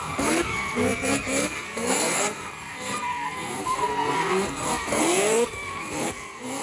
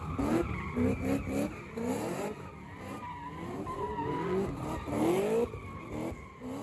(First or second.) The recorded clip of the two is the second